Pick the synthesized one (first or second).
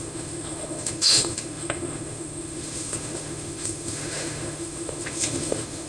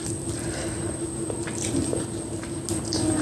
first